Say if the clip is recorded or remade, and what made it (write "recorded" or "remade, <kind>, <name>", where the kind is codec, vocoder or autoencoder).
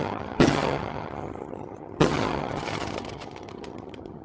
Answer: remade, vocoder, HiFi-GAN